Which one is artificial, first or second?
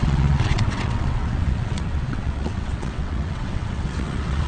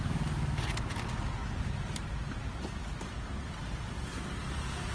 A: first